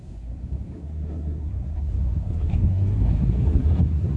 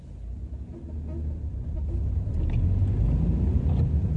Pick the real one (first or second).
second